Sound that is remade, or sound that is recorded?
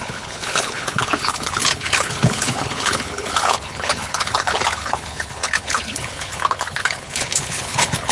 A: remade